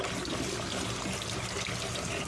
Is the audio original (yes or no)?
yes